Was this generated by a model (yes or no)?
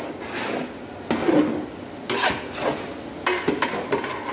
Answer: no